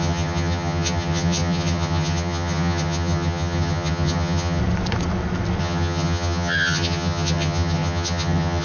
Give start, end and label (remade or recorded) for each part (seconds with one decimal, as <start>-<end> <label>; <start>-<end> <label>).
0.0-4.6 remade; 4.6-5.6 recorded; 5.6-8.6 remade